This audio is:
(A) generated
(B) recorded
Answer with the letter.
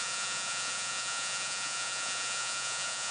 A